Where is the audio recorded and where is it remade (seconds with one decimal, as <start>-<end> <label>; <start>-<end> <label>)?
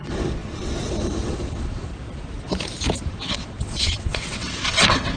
0.0-1.9 remade; 1.9-3.1 recorded; 3.1-5.2 remade